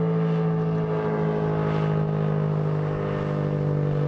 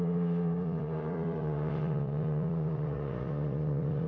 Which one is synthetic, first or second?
second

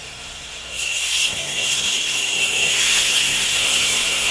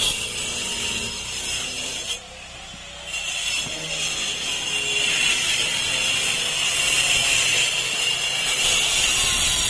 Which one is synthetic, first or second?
first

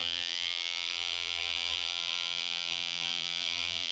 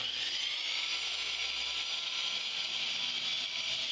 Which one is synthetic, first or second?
first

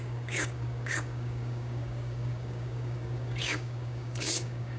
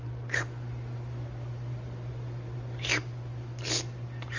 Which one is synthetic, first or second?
first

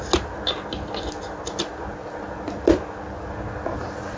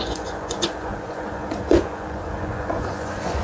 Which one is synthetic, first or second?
second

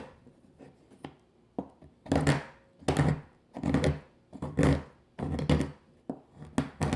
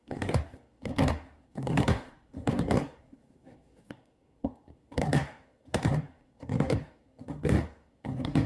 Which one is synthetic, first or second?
second